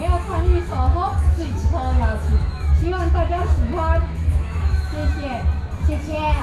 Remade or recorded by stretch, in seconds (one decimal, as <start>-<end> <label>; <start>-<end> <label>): 0.0-5.0 remade; 5.0-6.4 recorded